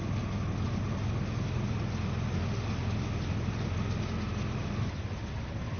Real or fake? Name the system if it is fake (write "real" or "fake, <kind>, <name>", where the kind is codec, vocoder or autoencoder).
real